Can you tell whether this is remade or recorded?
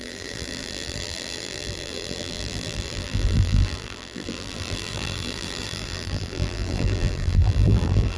remade